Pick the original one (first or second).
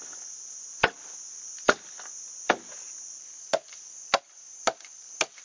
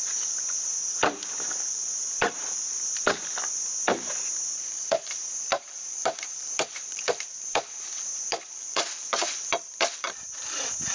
first